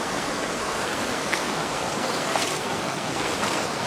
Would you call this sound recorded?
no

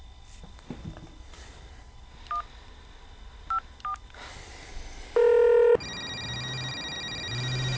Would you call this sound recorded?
yes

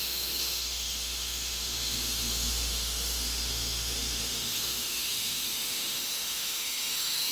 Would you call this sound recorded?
no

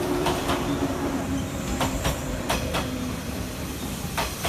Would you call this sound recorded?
no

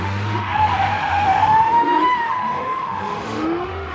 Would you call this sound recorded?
no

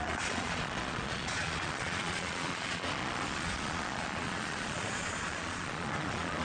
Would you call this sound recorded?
no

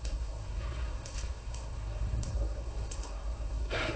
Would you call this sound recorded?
no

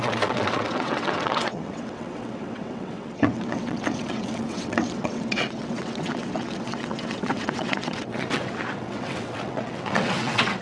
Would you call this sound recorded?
no